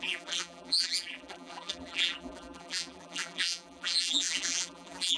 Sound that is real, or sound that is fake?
fake